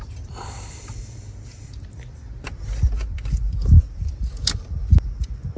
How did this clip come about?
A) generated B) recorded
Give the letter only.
B